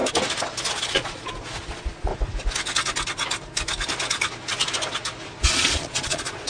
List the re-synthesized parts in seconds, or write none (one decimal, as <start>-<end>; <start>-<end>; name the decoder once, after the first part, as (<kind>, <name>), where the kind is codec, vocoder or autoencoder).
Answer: 0.7-2.1 (vocoder, Vocos); 5.5-6.5